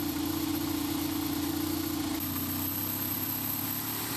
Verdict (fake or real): real